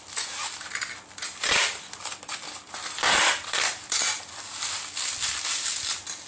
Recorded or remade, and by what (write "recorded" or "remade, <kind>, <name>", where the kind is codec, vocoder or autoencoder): recorded